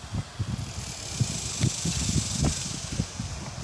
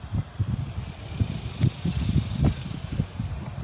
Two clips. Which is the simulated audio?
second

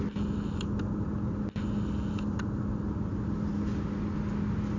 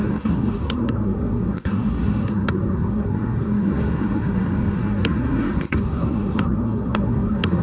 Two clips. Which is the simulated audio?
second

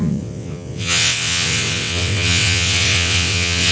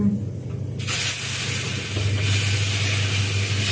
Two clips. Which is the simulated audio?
first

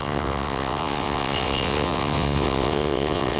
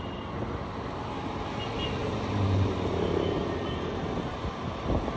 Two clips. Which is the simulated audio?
first